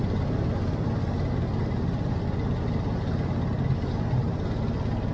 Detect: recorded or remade recorded